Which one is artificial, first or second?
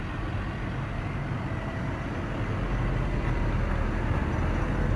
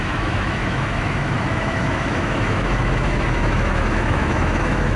second